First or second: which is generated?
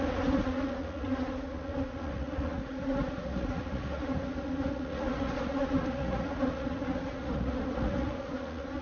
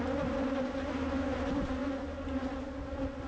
first